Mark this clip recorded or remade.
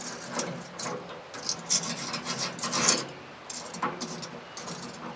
recorded